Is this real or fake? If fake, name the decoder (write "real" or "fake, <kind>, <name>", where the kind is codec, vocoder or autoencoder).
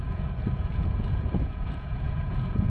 fake, vocoder, Vocos